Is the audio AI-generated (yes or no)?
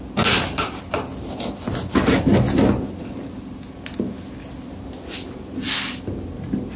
no